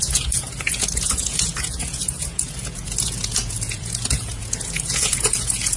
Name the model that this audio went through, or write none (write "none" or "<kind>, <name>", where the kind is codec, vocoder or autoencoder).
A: vocoder, Vocos